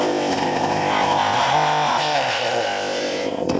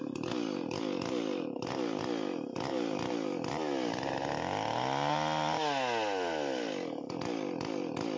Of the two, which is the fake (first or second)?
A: first